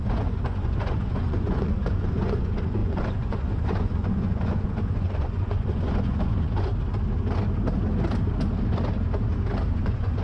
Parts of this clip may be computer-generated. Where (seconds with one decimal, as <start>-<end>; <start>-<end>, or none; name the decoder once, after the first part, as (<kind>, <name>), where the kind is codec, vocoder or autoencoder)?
0.0-6.7 (vocoder, Vocos); 9.7-10.2